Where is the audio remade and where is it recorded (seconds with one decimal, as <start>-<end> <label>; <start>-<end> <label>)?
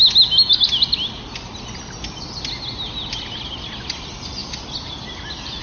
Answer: 0.0-5.6 recorded